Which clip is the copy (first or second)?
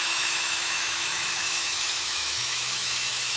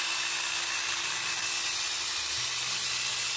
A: first